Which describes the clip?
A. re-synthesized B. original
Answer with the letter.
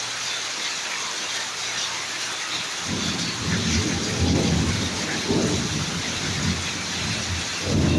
B